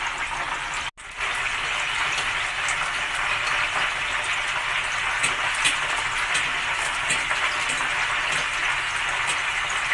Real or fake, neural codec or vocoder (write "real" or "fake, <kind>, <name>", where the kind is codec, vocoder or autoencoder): real